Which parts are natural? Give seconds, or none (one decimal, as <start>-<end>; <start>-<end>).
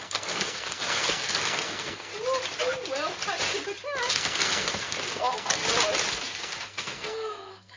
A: 2.1-4.1; 5.6-6.1